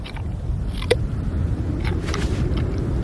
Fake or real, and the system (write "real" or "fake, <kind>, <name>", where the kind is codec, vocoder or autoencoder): real